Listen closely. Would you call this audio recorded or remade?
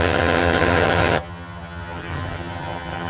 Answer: remade